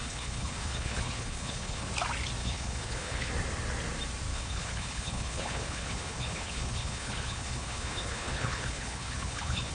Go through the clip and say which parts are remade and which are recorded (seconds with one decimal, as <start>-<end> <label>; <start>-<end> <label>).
0.0-1.9 remade; 1.9-2.4 recorded; 2.4-3.3 remade; 3.3-4.3 recorded; 4.3-9.7 remade